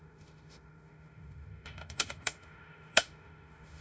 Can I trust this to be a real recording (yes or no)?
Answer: no